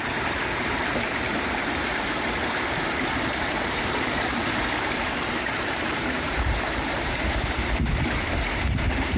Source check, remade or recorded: remade